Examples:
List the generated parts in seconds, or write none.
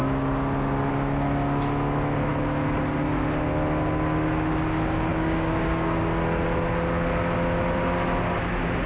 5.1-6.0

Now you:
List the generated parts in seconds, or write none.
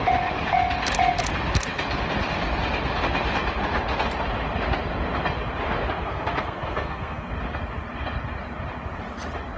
6.0-7.3